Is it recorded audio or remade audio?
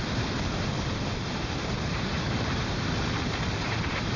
remade